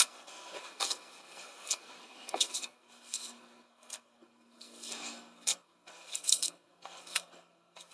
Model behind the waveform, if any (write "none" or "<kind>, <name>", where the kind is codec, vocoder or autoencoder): codec, SNAC